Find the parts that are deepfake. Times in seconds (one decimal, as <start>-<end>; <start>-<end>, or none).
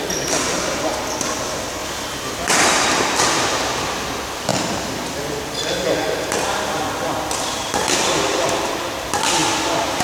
none